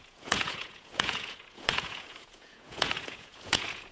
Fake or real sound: fake